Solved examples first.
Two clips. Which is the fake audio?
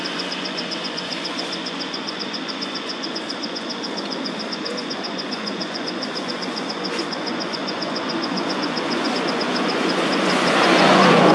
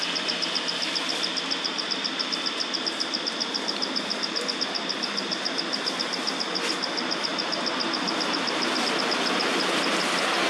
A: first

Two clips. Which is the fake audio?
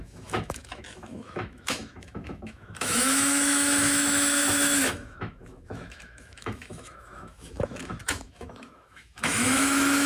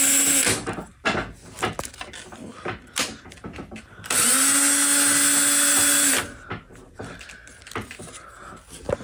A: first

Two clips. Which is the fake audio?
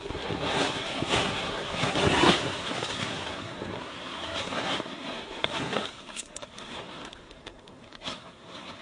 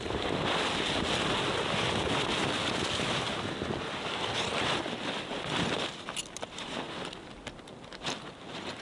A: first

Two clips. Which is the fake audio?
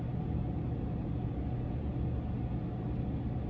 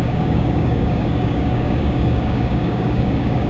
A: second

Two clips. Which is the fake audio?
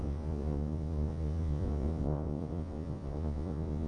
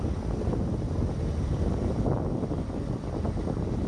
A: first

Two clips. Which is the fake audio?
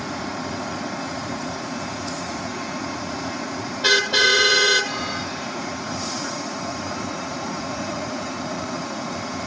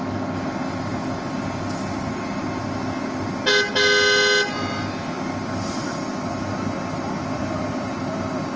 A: first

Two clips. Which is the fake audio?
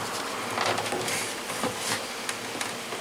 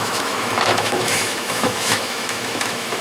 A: second